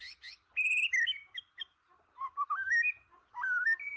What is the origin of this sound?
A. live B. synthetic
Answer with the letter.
A